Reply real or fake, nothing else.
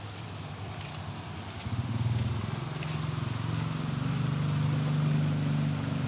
real